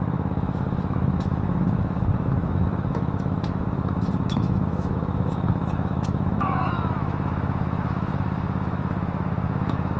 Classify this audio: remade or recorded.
remade